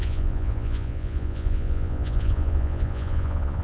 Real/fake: fake